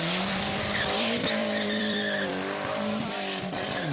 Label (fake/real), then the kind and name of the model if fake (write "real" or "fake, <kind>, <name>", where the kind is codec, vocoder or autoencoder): fake, vocoder, BigVGAN v2